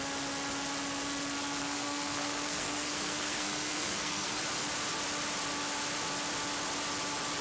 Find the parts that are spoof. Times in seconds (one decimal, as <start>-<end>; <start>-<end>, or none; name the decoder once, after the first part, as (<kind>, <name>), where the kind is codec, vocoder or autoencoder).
1.6-4.4 (codec, SNAC)